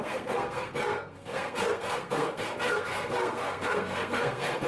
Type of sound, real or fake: fake